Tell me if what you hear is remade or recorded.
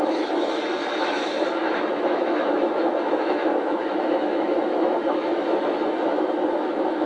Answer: remade